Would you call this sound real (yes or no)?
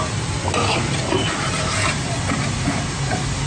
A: yes